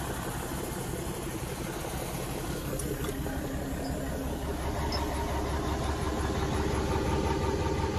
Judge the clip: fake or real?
real